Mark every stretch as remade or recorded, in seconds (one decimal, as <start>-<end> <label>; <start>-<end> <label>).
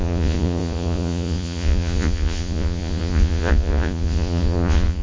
0.0-5.0 remade